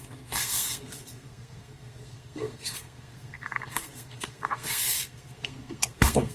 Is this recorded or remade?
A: remade